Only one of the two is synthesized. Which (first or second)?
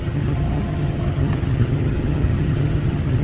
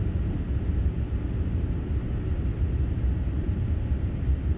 first